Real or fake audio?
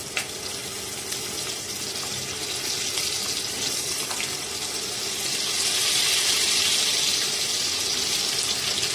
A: real